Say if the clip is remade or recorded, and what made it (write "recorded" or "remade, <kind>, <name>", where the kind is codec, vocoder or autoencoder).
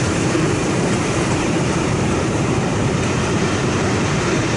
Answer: remade, vocoder, BigVGAN v2